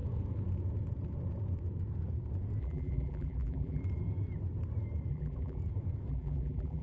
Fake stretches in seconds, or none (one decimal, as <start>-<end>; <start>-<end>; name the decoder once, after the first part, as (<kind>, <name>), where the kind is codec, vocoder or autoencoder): 2.6-3.8 (vocoder, BigVGAN v2); 5.1-5.6; 6.1-6.8

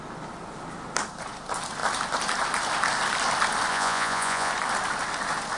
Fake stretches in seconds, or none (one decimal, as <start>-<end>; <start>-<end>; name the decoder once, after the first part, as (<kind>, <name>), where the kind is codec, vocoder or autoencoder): 3.7-4.5 (vocoder, Vocos)

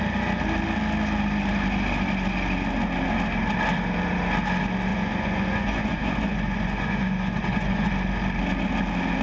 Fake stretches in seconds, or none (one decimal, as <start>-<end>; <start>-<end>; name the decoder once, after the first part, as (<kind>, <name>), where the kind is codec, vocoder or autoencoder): 4.9-7.9 (vocoder, Vocos)

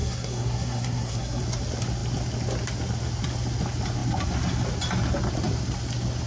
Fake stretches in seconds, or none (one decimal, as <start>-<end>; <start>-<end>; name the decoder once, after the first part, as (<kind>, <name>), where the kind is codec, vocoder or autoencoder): 0.0-1.4 (codec, SNAC)

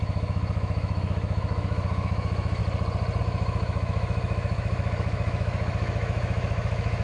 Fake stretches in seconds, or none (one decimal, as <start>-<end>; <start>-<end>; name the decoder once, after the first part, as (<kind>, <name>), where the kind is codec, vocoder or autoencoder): 0.0-2.6 (autoencoder, DAC-VAE); 3.2-7.0

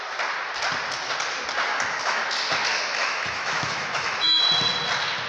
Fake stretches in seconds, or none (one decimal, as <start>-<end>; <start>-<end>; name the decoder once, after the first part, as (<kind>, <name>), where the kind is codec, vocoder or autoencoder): 1.7-2.2 (autoencoder, DAC-VAE); 2.7-4.4

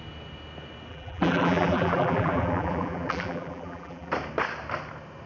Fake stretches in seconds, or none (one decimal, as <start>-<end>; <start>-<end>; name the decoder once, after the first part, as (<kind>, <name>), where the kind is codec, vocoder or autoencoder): 0.9-4.1 (vocoder, BigVGAN v2)

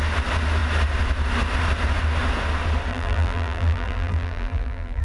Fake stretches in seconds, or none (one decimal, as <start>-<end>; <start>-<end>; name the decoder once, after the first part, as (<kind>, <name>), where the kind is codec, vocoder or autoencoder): 2.9-5.0 (vocoder, BigVGAN v2)